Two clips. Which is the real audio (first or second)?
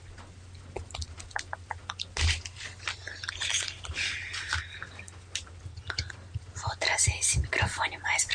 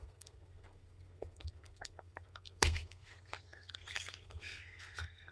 first